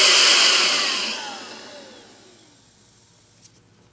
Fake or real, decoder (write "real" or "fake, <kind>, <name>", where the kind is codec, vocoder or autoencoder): real